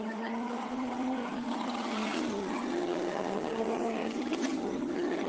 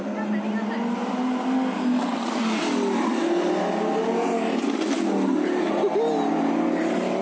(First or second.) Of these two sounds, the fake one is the first